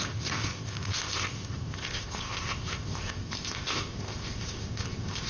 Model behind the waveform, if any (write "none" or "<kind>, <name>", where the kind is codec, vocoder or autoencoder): codec, ZipCodec